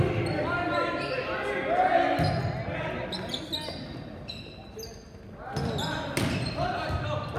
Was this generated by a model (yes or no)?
no